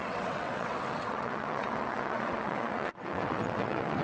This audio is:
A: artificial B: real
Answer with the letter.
A